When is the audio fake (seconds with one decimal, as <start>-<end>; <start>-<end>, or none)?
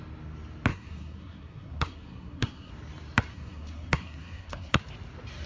0.7-2.7; 3.3-4.8